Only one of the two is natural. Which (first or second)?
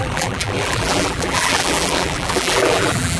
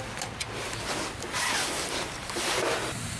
second